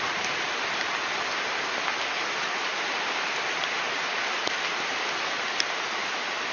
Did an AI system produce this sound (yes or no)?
no